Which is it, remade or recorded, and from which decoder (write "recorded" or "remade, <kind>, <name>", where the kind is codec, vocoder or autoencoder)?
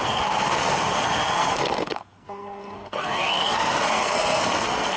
remade, codec, SNAC